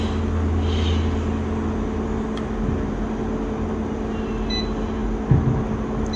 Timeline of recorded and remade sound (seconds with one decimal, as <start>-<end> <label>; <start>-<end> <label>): 0.0-6.2 recorded